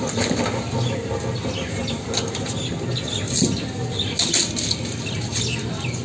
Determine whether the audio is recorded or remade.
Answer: recorded